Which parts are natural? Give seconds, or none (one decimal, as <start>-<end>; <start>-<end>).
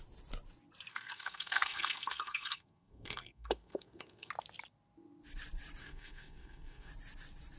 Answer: 0.0-0.9; 4.3-5.8; 6.9-7.6